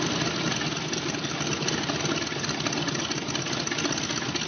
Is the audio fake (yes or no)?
no